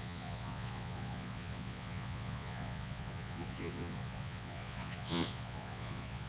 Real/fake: fake